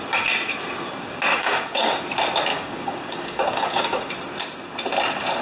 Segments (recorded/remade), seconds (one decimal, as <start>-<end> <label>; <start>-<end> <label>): 0.0-1.3 recorded; 1.3-2.0 remade; 2.0-2.5 recorded; 2.5-4.1 remade; 4.1-5.4 recorded